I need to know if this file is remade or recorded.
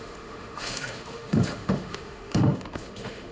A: remade